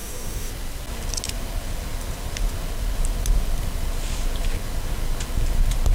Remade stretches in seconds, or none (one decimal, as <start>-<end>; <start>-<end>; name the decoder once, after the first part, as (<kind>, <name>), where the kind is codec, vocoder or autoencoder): 0.0-0.5 (codec, DAC)